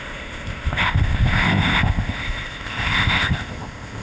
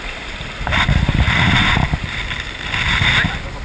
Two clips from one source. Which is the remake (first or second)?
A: first